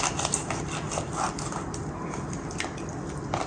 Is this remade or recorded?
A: recorded